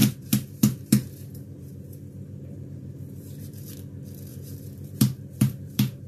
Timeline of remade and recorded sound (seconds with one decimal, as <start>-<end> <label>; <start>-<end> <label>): 0.0-3.7 remade; 3.7-4.3 recorded; 4.3-6.1 remade